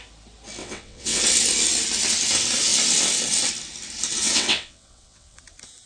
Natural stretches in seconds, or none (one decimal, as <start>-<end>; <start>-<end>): 0.0-0.6; 1.2-4.2; 5.4-5.9